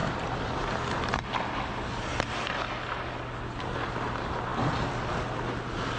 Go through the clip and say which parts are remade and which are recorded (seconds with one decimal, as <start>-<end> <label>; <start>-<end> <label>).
0.0-6.0 recorded